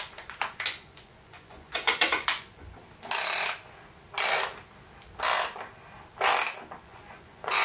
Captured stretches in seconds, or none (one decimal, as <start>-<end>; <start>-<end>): 2.8-6.8